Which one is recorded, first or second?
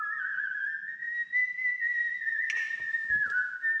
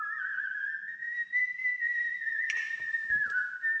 first